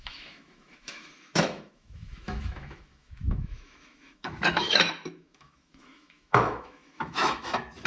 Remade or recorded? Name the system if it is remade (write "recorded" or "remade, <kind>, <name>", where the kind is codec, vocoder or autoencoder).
remade, autoencoder, DAC-VAE